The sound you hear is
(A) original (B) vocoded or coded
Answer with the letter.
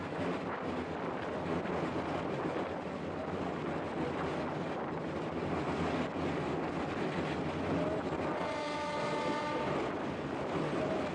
A